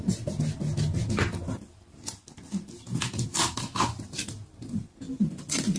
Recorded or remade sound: recorded